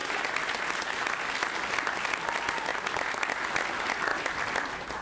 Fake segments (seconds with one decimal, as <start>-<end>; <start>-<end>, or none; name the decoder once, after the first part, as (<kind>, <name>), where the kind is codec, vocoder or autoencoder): none